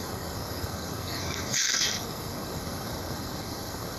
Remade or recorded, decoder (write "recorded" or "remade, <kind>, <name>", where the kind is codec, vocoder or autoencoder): remade, codec, SNAC